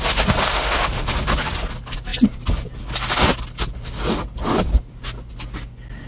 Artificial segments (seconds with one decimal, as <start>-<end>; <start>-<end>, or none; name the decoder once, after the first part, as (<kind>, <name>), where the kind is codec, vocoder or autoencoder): 0.5-1.1 (autoencoder, DAC-VAE)